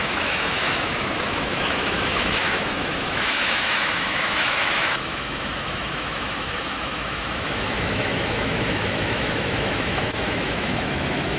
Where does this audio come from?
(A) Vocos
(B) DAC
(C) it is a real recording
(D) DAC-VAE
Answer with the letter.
D